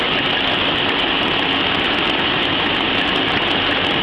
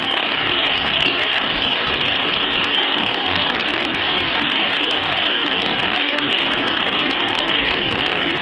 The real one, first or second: first